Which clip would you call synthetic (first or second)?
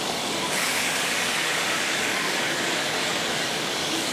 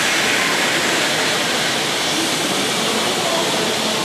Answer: first